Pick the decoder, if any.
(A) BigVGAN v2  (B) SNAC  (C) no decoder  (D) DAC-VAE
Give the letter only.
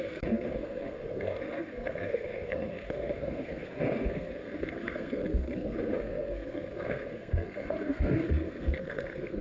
B